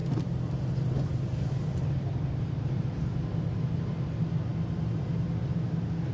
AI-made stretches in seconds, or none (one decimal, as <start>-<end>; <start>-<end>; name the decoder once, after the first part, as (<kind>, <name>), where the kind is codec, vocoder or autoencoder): 0.0-2.5 (vocoder, BigVGAN v2)